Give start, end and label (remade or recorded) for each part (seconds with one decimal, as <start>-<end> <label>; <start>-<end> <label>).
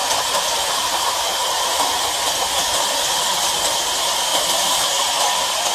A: 0.0-2.0 remade; 2.0-4.3 recorded; 4.3-4.9 remade; 4.9-5.7 recorded